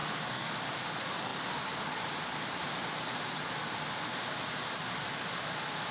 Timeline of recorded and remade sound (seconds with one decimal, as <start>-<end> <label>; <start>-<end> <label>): 0.0-0.5 remade; 0.5-5.9 recorded